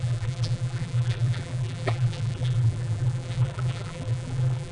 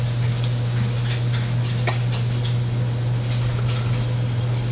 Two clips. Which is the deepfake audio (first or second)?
first